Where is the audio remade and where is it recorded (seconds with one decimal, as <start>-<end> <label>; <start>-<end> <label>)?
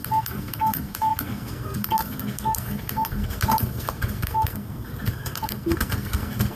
0.0-6.6 remade